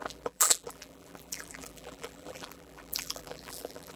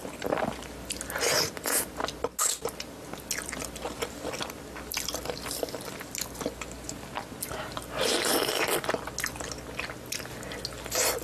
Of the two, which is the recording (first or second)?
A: second